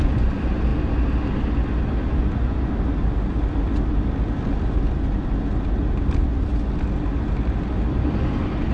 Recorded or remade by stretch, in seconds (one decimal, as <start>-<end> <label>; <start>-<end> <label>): 0.0-8.7 recorded